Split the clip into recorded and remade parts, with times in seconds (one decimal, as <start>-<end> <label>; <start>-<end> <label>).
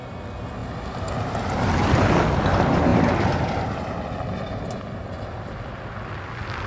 0.0-6.7 recorded